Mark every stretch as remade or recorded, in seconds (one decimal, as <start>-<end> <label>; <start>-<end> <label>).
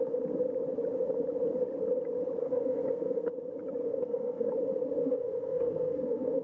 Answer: 0.0-2.4 recorded; 2.4-3.3 remade; 3.3-3.8 recorded; 3.8-4.5 remade; 4.5-5.0 recorded; 5.0-6.4 remade